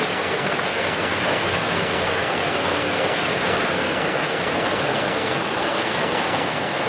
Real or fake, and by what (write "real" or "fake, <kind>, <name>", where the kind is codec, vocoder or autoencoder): fake, codec, SNAC